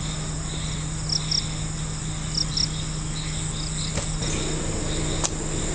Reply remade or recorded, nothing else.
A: recorded